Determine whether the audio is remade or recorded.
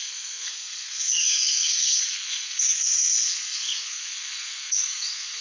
remade